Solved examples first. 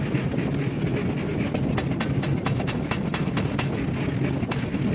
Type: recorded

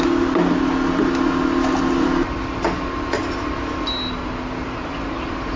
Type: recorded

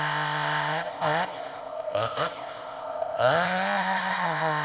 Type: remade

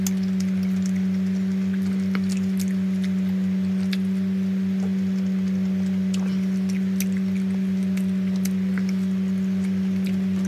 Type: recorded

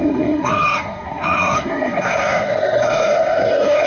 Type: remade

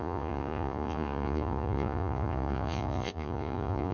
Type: remade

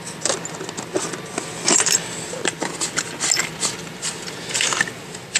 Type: recorded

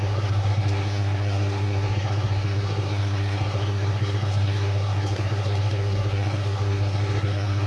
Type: remade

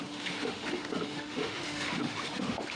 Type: remade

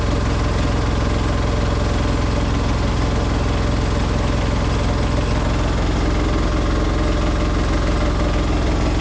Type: recorded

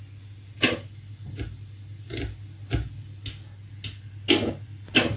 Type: recorded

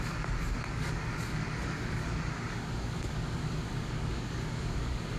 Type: remade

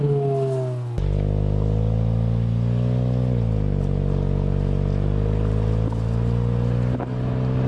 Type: recorded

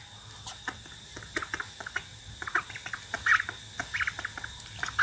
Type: recorded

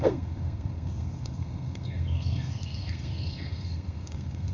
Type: remade